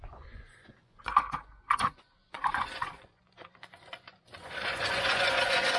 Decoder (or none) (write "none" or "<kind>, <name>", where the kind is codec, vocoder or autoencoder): vocoder, Vocos